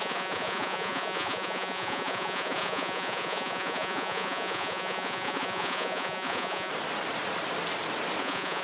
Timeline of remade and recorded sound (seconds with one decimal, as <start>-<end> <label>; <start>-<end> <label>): 0.0-6.7 remade; 6.7-8.2 recorded; 8.2-8.6 remade